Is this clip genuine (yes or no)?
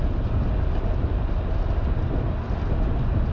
yes